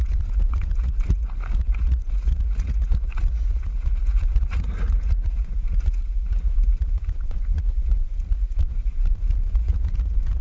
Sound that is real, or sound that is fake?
fake